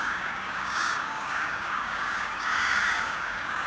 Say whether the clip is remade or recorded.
remade